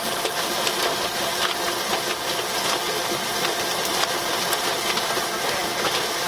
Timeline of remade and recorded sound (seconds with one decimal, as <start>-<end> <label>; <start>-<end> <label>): 0.0-1.3 remade; 1.3-3.0 recorded; 3.0-6.3 remade